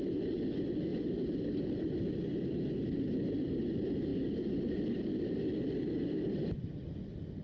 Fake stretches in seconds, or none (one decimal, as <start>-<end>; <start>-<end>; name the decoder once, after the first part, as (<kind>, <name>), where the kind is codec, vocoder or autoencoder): 4.1-5.8 (vocoder, BigVGAN v2)